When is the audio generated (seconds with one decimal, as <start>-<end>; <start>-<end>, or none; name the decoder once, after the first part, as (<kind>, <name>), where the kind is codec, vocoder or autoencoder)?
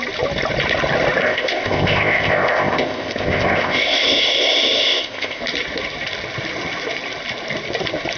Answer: 1.2-5.4 (codec, ZipCodec)